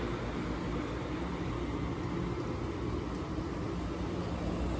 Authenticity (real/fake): real